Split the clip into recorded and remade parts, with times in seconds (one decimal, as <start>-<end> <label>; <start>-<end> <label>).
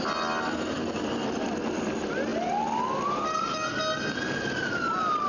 0.0-5.3 recorded